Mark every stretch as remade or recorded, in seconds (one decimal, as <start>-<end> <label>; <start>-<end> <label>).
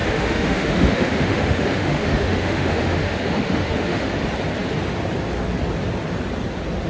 0.0-4.1 remade; 4.1-6.9 recorded